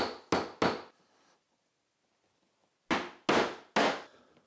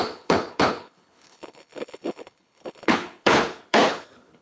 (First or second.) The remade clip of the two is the second